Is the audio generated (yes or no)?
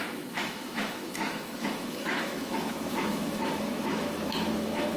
yes